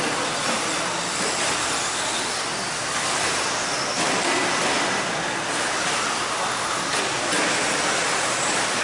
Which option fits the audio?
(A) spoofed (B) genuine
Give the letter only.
B